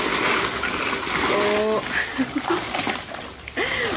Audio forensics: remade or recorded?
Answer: recorded